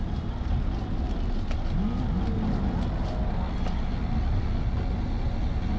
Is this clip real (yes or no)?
yes